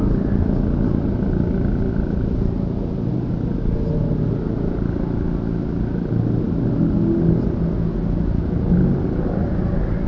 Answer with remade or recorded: recorded